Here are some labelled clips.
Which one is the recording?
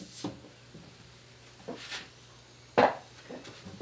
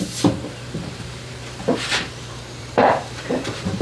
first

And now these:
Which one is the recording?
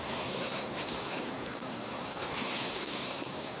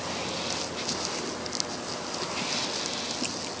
second